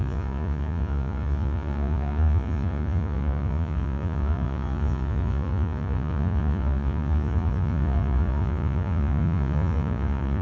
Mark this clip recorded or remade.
remade